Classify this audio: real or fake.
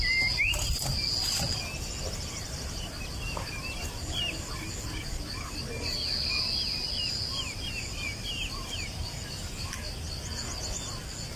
real